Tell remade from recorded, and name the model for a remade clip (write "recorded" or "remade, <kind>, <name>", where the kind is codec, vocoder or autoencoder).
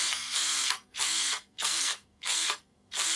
remade, codec, SNAC